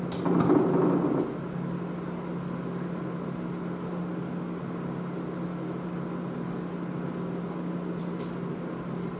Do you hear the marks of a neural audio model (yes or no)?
no